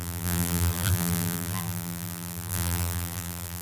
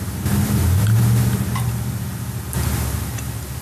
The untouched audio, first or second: second